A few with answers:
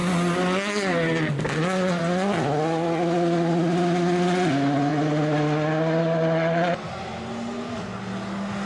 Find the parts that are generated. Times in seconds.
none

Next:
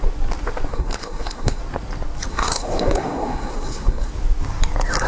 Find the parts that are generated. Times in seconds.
0.7-1.6 (codec, SNAC); 2.3-4.1

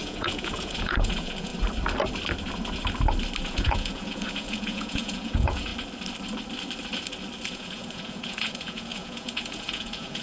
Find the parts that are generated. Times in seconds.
0.0-1.5 (vocoder, Vocos); 3.4-5.7; 7.5-10.2

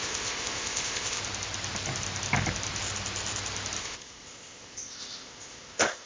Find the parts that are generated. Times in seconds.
0.0-1.2 (codec, ZipCodec); 3.8-6.1

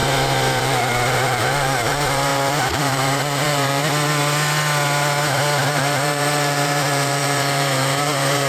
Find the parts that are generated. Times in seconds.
0.6-3.8 (vocoder, BigVGAN v2); 5.7-8.5

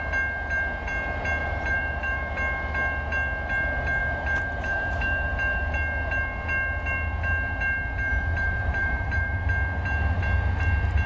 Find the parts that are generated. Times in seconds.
1.4-2.3 (vocoder, BigVGAN v2); 4.0-5.6; 8.1-9.5